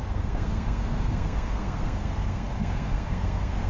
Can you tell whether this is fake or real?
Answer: fake